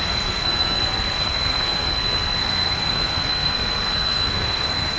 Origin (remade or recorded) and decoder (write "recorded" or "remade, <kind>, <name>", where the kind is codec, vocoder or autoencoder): remade, codec, SNAC